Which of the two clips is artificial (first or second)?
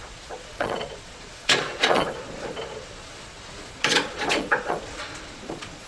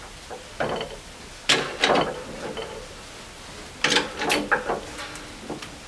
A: first